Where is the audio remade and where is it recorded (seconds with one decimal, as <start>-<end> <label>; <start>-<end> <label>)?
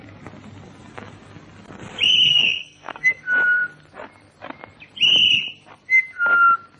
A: 0.0-2.3 recorded; 2.3-3.2 remade; 3.2-6.8 recorded